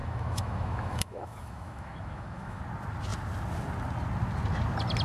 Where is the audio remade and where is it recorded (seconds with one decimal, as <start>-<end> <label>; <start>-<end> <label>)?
0.0-2.6 remade; 2.6-5.0 recorded